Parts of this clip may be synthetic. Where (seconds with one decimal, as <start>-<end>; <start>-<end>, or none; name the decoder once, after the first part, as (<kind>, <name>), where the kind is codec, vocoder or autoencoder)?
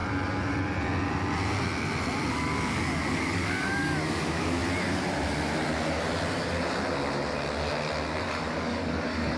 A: 2.3-4.6 (codec, DAC); 8.2-9.4